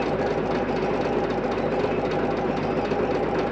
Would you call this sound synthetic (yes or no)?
no